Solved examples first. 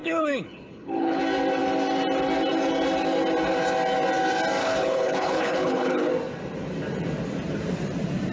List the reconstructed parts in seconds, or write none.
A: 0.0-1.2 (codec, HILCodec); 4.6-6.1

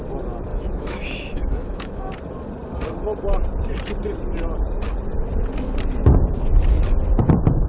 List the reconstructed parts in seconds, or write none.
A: 0.5-2.1 (autoencoder, DAC-VAE)

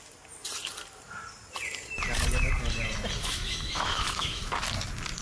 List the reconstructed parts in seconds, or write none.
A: 3.2-4.5 (autoencoder, DAC-VAE)